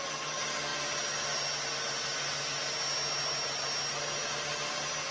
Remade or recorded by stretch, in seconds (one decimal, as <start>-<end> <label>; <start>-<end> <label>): 0.0-5.1 recorded